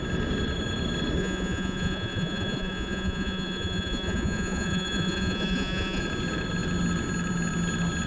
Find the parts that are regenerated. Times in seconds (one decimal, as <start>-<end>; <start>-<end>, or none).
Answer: 1.2-6.0